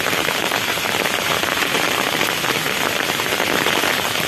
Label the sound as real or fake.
fake